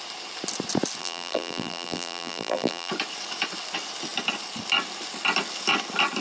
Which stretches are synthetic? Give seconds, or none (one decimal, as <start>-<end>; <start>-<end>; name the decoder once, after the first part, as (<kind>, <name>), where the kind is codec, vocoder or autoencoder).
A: 1.0-2.9 (vocoder, BigVGAN v2)